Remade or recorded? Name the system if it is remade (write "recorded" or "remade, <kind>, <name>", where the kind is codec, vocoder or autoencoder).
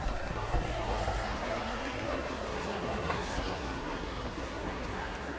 remade, codec, SNAC